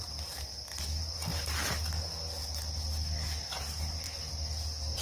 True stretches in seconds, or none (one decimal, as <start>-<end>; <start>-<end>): 0.0-5.0